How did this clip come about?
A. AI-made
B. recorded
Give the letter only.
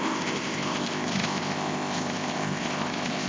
A